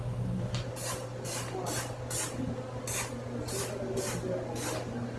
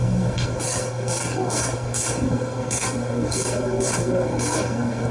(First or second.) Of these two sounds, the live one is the first